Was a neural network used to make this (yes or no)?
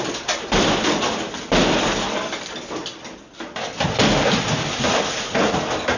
no